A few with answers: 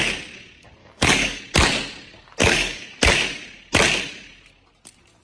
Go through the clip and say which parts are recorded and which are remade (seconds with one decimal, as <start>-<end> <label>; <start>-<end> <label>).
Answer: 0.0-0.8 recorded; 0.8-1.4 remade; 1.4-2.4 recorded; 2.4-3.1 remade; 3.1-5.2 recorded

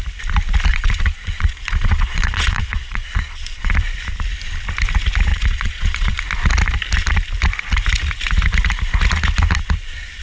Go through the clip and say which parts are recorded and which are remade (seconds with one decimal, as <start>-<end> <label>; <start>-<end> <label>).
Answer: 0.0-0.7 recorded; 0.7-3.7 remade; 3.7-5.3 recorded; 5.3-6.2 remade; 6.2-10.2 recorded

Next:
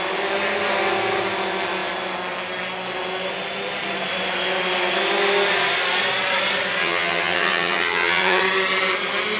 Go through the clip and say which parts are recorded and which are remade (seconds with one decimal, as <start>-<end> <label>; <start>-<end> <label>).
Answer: 0.0-6.8 recorded; 6.8-8.4 remade; 8.4-9.4 recorded

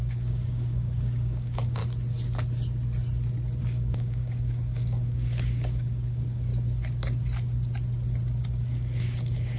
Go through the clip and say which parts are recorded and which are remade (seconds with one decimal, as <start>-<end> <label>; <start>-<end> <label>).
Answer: 0.0-1.8 remade; 1.8-3.6 recorded; 3.6-6.5 remade; 6.5-8.4 recorded; 8.4-9.6 remade

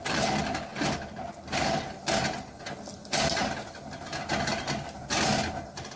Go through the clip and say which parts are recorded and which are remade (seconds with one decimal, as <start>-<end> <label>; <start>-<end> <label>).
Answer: 0.0-6.0 recorded

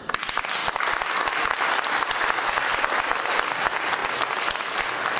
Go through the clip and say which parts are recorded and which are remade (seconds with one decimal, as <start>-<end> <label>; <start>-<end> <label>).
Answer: 0.0-5.2 recorded

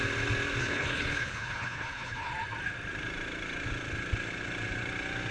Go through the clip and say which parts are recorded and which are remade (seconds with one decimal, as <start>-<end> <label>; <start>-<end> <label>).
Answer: 0.0-0.6 recorded; 0.6-2.3 remade; 2.3-5.3 recorded

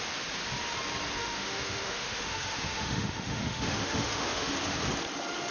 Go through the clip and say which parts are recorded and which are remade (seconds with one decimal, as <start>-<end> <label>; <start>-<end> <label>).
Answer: 0.0-1.2 recorded; 1.2-4.5 remade; 4.5-5.5 recorded